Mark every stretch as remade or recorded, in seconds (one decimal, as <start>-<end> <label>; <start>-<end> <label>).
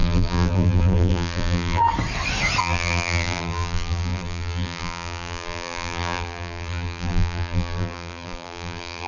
0.0-1.8 remade; 1.8-2.6 recorded; 2.6-9.1 remade